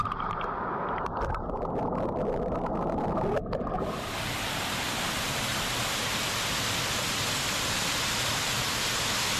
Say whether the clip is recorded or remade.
recorded